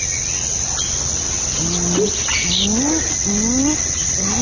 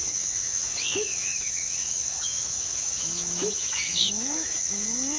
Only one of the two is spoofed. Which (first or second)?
second